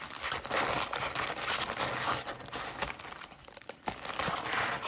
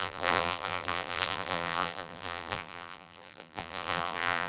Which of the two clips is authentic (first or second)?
first